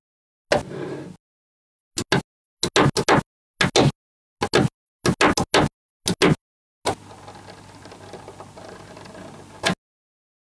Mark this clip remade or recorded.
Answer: recorded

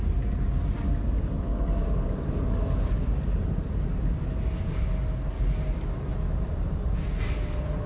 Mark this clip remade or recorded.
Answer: recorded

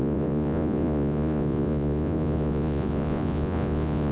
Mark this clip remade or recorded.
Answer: remade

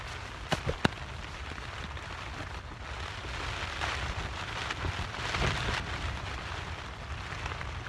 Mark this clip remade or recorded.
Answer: recorded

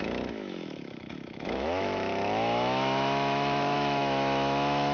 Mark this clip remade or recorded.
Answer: remade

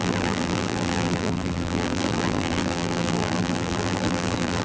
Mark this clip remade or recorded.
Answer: remade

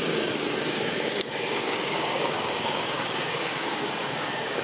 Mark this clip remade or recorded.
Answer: remade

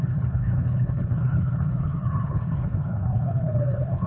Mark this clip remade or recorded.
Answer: remade